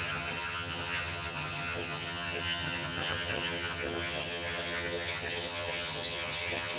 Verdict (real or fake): fake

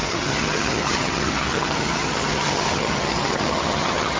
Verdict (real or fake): fake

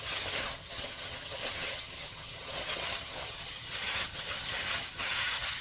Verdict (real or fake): fake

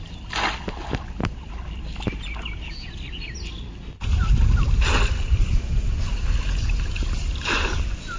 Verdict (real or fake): real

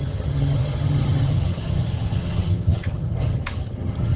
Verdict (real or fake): fake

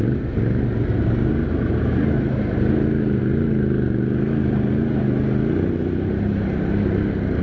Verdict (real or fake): real